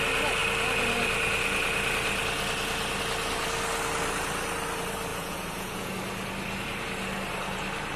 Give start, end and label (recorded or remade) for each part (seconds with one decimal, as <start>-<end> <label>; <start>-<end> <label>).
0.0-5.1 recorded; 5.1-5.9 remade; 5.9-8.0 recorded